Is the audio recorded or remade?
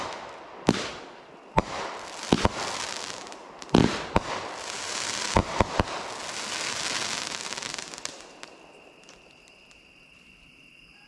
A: recorded